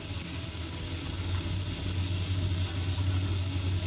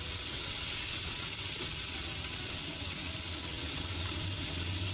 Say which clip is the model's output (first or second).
second